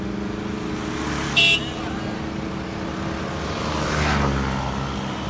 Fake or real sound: real